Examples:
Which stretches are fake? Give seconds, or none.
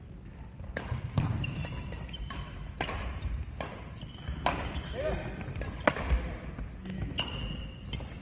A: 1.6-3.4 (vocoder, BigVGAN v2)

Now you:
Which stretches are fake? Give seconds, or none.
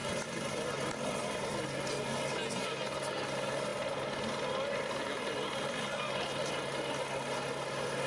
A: none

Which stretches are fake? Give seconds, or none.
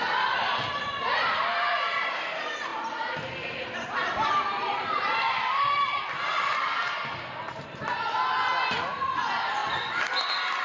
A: 0.0-6.3 (vocoder, BigVGAN v2); 8.9-9.6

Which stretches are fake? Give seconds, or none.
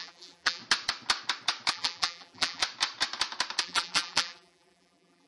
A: 0.0-0.6 (vocoder, BigVGAN v2); 1.7-2.6; 3.6-5.3